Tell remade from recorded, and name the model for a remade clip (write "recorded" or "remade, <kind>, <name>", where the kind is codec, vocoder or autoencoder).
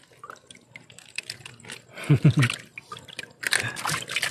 recorded